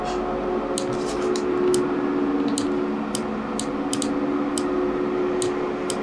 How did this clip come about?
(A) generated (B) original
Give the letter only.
B